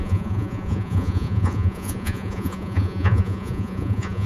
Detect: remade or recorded remade